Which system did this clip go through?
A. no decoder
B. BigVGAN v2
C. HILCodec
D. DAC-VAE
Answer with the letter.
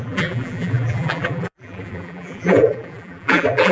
B